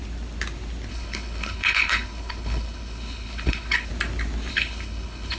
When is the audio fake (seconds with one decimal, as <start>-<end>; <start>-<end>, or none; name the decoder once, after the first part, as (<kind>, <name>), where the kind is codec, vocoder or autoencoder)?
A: 0.9-3.9 (codec, HILCodec); 4.5-5.4